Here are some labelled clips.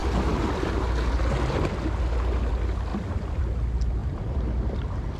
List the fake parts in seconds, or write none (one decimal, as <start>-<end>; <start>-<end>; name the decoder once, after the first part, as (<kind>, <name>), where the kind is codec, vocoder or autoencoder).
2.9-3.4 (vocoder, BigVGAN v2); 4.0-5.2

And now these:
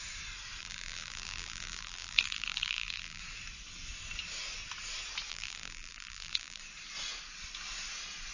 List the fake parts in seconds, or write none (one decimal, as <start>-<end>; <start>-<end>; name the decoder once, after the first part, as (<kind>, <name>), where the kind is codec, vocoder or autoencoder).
0.6-3.2 (vocoder, BigVGAN v2); 5.3-6.6

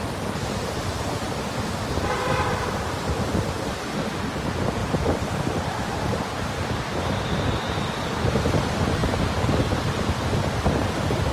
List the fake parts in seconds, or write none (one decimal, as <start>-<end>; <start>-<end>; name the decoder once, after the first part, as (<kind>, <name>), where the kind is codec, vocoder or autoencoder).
none

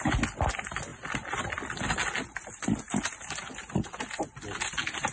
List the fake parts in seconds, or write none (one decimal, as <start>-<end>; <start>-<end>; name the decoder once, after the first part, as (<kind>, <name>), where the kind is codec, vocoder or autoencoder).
none